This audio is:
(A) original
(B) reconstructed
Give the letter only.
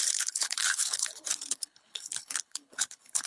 B